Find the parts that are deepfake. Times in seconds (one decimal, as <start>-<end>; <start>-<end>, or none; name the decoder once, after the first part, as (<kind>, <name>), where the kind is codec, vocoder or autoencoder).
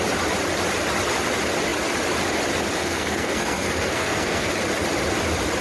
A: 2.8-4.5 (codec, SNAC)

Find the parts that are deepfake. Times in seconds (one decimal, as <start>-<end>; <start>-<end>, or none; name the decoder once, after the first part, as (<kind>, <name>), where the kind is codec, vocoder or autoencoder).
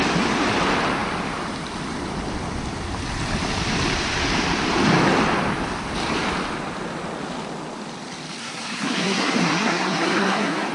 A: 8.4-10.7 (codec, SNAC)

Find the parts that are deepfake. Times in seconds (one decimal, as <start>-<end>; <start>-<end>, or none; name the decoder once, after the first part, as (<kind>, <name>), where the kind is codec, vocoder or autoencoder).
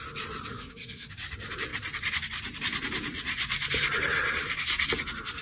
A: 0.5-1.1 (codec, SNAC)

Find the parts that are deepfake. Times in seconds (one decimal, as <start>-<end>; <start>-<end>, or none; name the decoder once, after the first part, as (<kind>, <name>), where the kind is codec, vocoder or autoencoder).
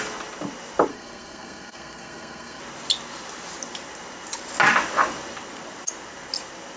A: 0.9-2.6 (codec, SNAC)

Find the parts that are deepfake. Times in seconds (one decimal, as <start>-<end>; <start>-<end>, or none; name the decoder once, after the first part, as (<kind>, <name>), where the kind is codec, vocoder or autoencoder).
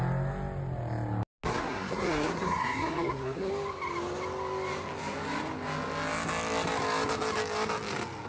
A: 1.5-3.5 (codec, SNAC)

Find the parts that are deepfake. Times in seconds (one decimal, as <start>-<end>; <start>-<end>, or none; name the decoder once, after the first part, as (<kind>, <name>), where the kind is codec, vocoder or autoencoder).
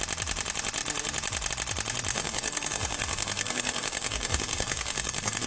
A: 2.1-5.5 (codec, SNAC)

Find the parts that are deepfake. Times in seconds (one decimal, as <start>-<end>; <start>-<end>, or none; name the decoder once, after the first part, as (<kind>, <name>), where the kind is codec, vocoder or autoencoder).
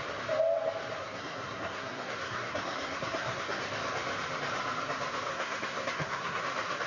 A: 1.0-3.6 (codec, SNAC); 5.3-6.4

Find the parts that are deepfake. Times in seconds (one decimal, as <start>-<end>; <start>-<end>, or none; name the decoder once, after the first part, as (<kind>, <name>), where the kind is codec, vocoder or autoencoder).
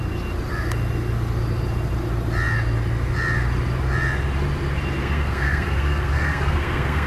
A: 5.0-7.1 (codec, SNAC)